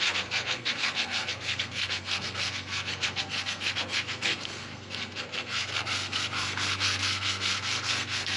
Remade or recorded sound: remade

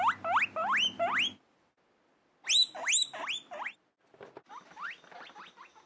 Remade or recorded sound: recorded